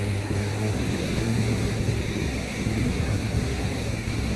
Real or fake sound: fake